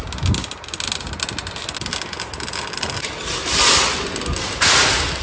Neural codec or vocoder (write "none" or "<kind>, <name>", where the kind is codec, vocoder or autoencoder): none